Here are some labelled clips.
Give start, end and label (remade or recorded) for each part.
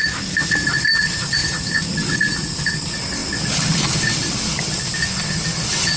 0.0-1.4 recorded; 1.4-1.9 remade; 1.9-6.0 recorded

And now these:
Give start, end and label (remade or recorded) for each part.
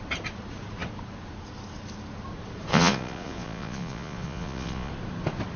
0.0-2.7 recorded; 2.7-4.9 remade; 4.9-5.6 recorded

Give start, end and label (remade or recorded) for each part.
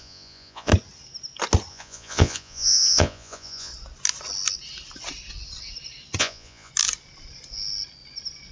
0.0-0.7 remade; 0.7-1.7 recorded; 1.7-3.7 remade; 3.7-6.2 recorded; 6.2-6.7 remade; 6.7-8.5 recorded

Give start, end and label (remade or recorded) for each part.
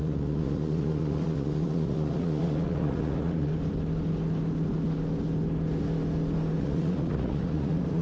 0.0-3.5 remade; 3.5-6.6 recorded; 6.6-8.0 remade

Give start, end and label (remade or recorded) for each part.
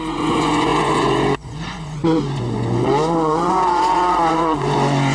0.0-5.1 remade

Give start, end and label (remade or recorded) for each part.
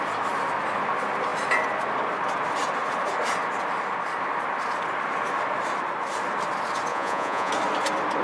0.0-6.9 recorded; 6.9-7.5 remade; 7.5-8.2 recorded